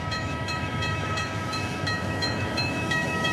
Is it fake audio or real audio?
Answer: fake